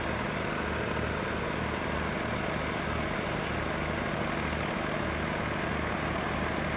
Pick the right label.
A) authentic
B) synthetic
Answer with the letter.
A